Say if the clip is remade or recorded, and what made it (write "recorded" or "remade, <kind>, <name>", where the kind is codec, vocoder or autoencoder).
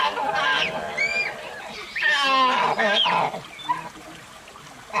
recorded